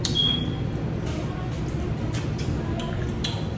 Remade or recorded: recorded